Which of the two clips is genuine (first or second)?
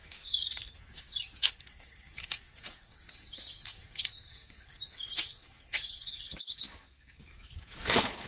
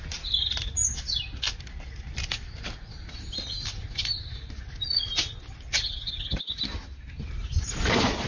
second